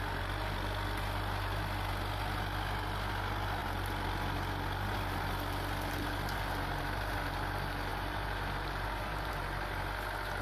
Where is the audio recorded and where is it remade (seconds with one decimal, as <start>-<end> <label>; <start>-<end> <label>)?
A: 0.0-7.9 recorded; 7.9-9.3 remade; 9.3-10.4 recorded